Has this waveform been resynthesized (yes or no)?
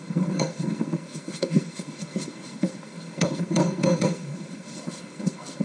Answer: yes